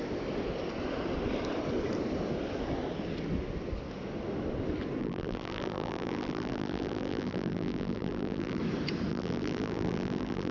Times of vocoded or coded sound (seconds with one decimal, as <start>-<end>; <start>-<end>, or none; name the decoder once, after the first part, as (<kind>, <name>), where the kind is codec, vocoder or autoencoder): 5.0-8.6 (vocoder, BigVGAN v2); 9.1-10.5